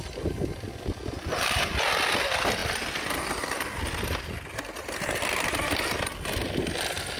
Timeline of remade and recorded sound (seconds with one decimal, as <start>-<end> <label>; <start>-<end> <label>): 0.0-7.2 recorded